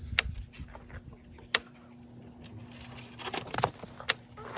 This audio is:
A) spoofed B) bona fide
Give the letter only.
B